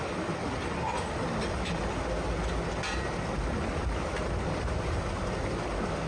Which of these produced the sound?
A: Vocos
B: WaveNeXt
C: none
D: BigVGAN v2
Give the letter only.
C